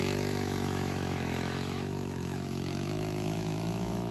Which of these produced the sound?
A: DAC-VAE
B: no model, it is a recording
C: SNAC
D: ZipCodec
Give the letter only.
A